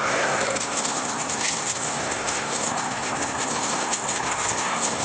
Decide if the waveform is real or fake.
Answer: fake